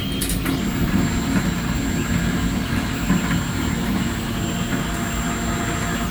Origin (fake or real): real